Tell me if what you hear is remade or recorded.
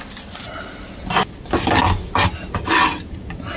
recorded